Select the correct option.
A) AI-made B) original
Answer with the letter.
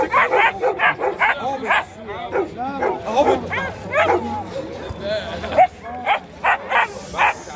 B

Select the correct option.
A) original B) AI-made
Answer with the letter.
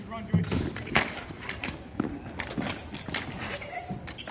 A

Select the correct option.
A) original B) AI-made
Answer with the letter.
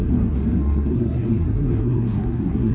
B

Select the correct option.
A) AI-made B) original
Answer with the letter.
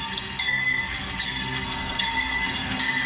A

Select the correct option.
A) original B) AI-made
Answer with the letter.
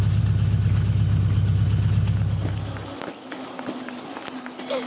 A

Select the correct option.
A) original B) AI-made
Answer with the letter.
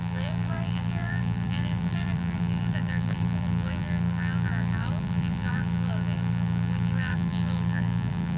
B